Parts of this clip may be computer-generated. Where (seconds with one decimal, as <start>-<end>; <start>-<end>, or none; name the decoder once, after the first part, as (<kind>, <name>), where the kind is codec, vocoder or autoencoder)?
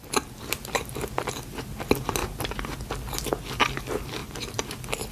none